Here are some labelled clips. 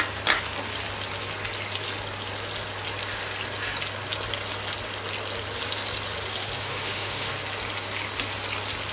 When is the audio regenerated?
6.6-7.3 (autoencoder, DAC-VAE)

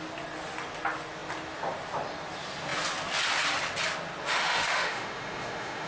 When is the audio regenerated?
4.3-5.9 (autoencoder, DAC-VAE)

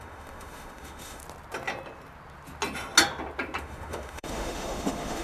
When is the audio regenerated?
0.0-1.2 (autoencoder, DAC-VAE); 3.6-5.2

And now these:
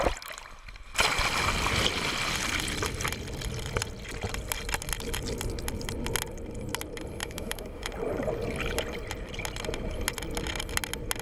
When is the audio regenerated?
7.2-7.9 (autoencoder, DAC-VAE)